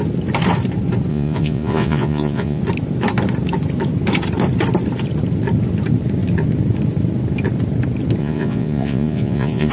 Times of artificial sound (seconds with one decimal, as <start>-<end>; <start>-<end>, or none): 1.1-2.6; 8.2-9.7